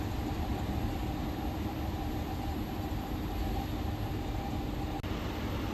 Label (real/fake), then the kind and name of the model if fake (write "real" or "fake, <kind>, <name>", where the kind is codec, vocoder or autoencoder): real